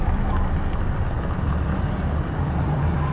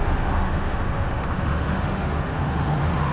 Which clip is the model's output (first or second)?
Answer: second